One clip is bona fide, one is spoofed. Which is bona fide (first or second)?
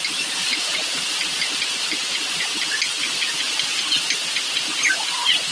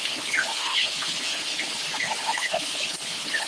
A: first